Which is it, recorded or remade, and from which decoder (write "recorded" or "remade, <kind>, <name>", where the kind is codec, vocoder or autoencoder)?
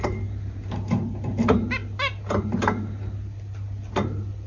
recorded